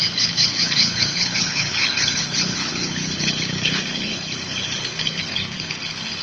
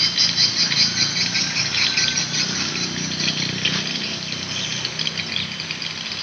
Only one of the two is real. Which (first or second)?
second